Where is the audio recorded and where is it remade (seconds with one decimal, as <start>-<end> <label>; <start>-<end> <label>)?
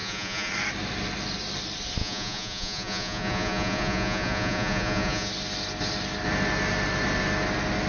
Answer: 0.0-0.5 remade; 0.5-2.0 recorded; 2.0-5.3 remade; 5.3-7.9 recorded